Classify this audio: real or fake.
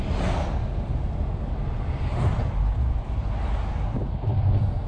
real